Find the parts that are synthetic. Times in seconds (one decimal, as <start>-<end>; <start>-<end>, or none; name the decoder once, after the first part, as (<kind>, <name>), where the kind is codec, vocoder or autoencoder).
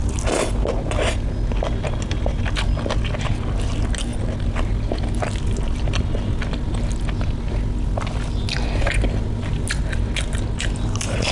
none